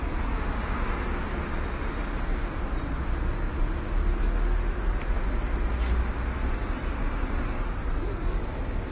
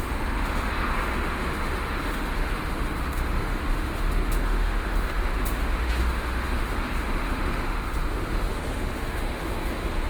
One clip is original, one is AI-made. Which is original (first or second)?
first